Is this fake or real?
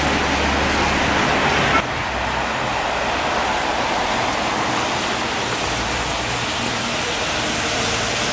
real